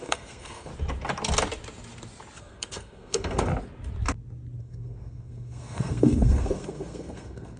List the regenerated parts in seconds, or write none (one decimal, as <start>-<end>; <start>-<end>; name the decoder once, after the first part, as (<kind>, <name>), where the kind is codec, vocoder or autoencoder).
0.0-0.7 (codec, SNAC); 2.4-3.5; 4.6-7.6